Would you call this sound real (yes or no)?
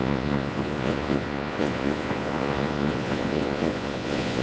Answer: no